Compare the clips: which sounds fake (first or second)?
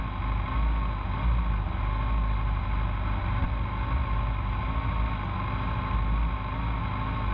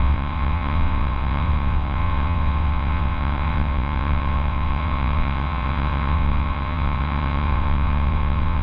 second